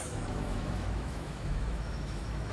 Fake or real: fake